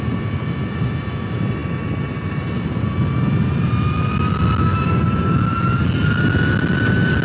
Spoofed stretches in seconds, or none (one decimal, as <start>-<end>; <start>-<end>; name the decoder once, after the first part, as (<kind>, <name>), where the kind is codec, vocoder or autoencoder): none